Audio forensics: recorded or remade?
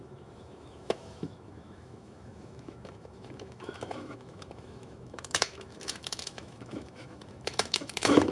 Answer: remade